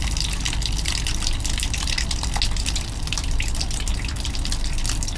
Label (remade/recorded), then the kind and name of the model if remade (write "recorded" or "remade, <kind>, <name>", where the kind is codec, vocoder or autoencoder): recorded